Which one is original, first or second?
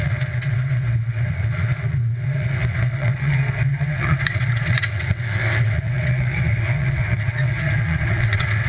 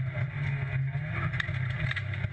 second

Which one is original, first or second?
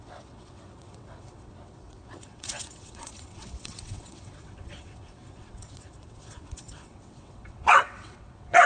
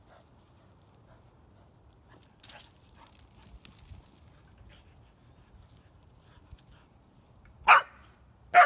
second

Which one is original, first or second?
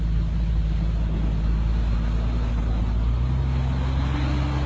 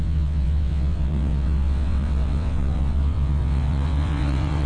first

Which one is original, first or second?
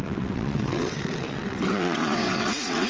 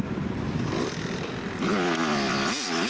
second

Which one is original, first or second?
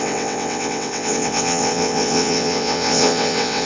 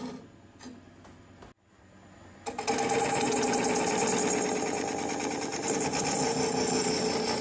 second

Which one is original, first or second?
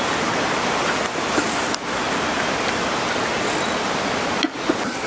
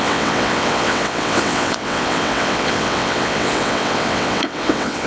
first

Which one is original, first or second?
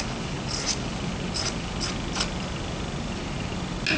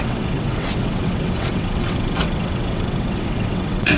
first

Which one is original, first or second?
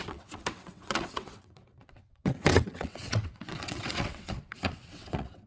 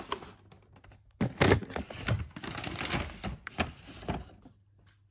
second